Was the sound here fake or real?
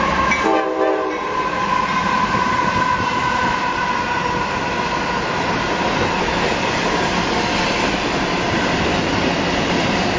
real